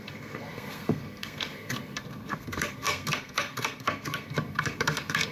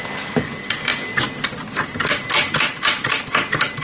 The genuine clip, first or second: second